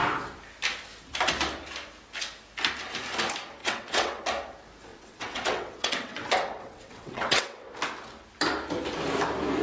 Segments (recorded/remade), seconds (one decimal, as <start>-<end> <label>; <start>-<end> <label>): 0.0-3.6 recorded; 3.6-4.2 remade; 4.2-4.9 recorded; 4.9-7.7 remade; 7.7-9.6 recorded